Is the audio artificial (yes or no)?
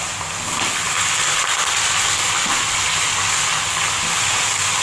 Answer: no